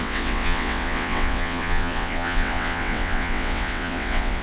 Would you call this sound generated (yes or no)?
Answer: yes